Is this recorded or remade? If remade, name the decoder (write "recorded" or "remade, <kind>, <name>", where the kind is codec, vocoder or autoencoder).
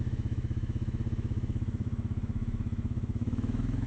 remade, autoencoder, DAC-VAE